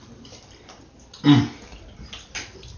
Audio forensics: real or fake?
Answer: real